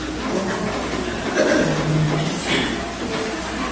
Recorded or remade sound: recorded